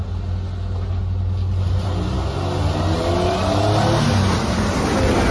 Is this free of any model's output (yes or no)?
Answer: yes